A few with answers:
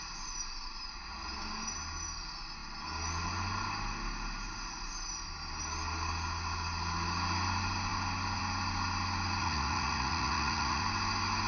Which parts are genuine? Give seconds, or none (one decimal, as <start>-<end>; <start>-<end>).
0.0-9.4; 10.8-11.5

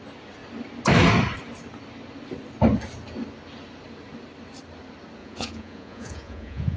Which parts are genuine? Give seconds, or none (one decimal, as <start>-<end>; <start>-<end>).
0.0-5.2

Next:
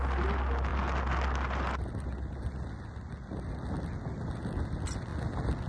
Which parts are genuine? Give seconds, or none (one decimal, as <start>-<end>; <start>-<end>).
0.0-5.7

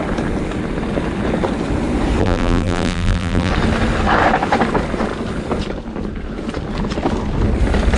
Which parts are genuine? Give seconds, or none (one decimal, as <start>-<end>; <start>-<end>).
0.0-2.2; 3.5-8.0

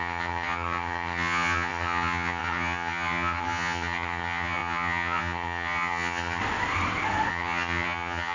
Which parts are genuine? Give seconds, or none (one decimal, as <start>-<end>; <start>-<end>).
6.4-7.3

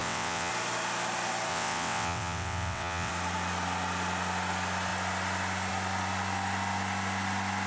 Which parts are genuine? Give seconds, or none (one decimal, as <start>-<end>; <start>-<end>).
0.5-1.5; 3.1-7.7

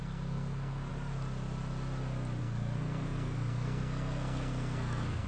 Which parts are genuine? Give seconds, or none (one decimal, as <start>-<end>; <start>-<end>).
0.9-2.4